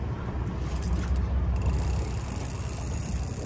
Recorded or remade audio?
recorded